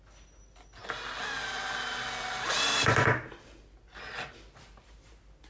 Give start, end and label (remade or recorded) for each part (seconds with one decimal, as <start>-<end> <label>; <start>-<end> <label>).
0.0-5.5 recorded